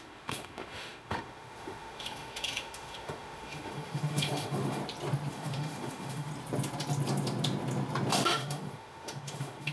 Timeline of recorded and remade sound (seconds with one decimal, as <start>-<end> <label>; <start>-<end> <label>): 0.0-4.8 remade; 4.8-5.3 recorded; 5.3-6.3 remade; 6.3-8.1 recorded; 8.1-9.7 remade